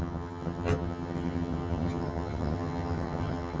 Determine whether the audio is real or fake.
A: fake